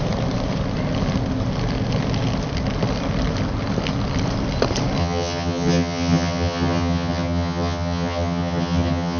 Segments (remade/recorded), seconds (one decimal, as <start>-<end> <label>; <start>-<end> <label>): 0.0-5.0 recorded; 5.0-9.2 remade

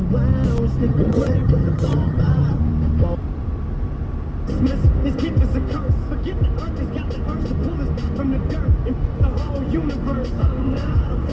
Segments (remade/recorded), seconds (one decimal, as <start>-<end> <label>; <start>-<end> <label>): 0.0-0.9 recorded; 0.9-2.6 remade; 2.6-11.3 recorded

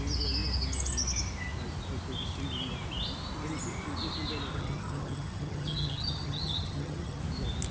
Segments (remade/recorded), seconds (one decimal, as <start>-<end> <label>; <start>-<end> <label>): 0.0-4.5 recorded; 4.5-7.2 remade; 7.2-7.7 recorded

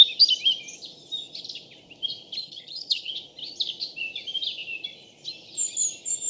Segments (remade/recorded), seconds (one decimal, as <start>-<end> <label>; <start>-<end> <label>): 0.0-2.4 recorded; 2.4-3.1 remade; 3.1-6.3 recorded